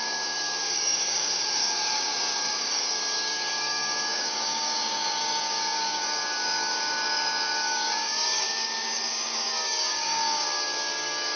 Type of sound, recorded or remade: remade